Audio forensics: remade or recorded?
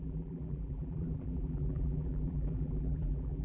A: remade